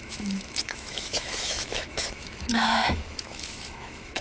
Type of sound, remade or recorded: remade